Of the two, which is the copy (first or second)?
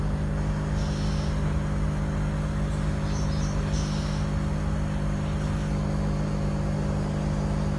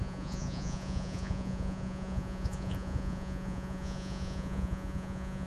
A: second